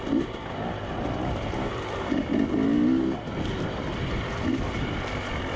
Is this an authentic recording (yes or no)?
yes